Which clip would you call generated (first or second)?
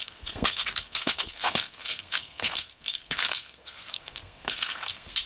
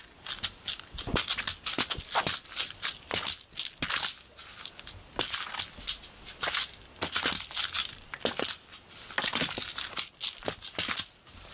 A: first